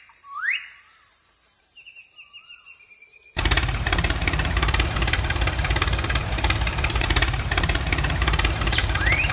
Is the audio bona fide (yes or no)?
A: no